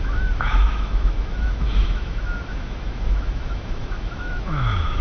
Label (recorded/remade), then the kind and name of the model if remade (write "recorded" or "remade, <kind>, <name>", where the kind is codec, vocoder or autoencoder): remade, autoencoder, DAC-VAE